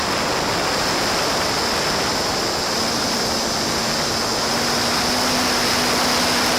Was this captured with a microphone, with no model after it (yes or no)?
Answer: yes